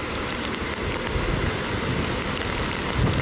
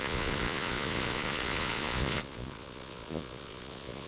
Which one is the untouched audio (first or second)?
first